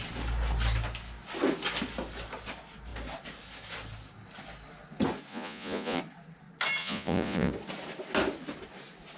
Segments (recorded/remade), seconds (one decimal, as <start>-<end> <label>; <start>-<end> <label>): 0.0-5.3 recorded; 5.3-6.0 remade; 6.0-6.8 recorded; 6.8-7.5 remade; 7.5-9.2 recorded